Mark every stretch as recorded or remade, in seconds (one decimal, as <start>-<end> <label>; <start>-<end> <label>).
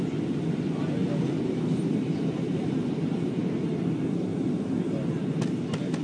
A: 0.0-6.0 recorded